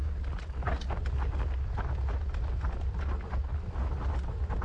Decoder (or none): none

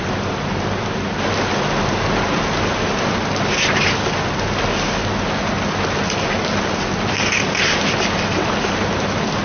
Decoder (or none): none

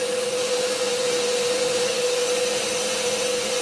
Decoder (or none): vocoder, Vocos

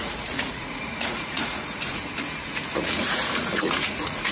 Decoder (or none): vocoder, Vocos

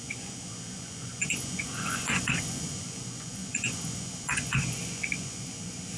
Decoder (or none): vocoder, Vocos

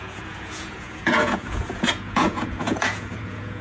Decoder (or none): vocoder, Vocos